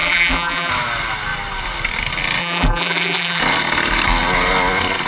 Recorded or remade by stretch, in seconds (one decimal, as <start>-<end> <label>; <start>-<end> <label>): 0.0-0.7 remade; 0.7-2.4 recorded; 2.4-3.4 remade; 3.4-5.1 recorded